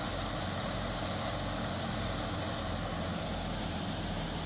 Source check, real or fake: real